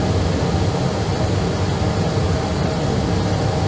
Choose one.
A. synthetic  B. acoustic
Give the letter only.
B